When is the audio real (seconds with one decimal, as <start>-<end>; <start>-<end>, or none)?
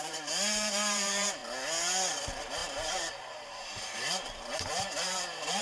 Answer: 1.4-2.1